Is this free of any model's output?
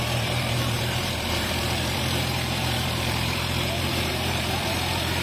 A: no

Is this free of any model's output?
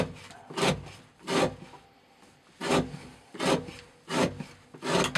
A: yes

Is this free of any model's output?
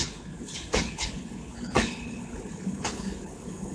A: no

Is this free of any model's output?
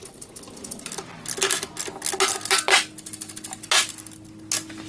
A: yes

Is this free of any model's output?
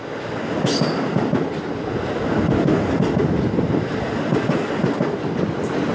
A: yes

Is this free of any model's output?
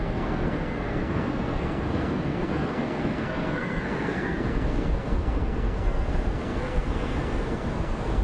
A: no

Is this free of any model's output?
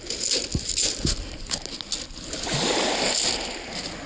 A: yes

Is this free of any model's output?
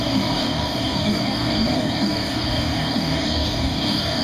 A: no